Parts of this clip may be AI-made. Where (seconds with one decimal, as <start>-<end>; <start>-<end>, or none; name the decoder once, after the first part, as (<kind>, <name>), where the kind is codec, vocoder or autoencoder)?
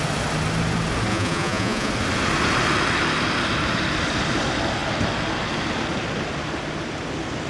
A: 1.1-1.9 (vocoder, Vocos)